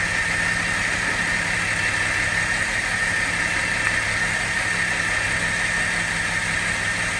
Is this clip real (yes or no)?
yes